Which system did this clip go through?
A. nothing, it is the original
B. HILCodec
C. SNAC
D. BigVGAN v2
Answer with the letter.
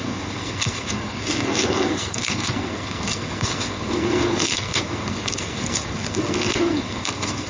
C